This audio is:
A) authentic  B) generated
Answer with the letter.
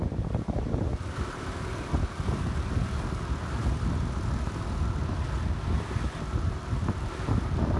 A